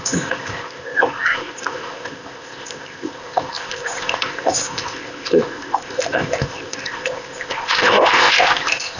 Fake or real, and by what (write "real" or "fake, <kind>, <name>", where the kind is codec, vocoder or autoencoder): fake, codec, ZipCodec